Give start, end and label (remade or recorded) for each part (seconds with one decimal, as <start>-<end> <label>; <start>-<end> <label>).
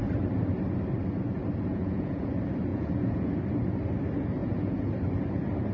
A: 0.0-1.7 recorded; 1.7-2.3 remade; 2.3-2.7 recorded; 2.7-3.3 remade; 3.3-4.4 recorded; 4.4-4.9 remade; 4.9-5.7 recorded